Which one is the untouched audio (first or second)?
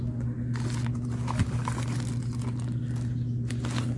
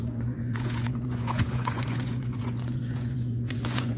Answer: first